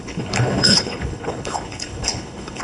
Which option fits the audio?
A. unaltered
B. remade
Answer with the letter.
B